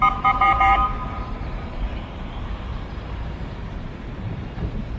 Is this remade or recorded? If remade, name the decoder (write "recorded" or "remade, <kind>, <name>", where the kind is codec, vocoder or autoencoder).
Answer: remade, vocoder, BigVGAN v2